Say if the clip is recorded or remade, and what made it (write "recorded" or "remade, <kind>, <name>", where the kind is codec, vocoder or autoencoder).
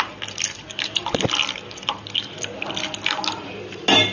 recorded